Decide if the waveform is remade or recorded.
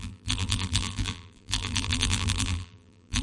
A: remade